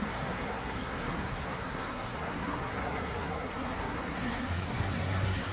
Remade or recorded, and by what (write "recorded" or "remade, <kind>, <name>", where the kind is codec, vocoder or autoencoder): remade, codec, SNAC